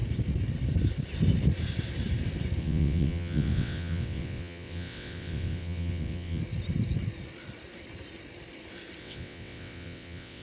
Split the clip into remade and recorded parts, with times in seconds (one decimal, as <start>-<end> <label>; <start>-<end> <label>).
0.0-2.6 recorded; 2.6-6.4 remade; 6.4-9.0 recorded; 9.0-10.4 remade